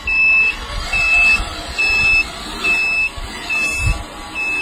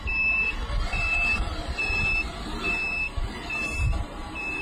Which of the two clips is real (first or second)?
first